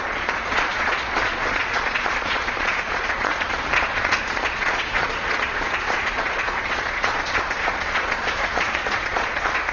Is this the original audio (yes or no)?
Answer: no